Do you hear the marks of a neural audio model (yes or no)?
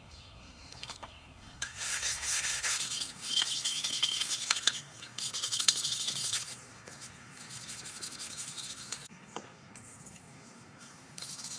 yes